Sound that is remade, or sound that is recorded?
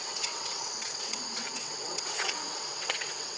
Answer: remade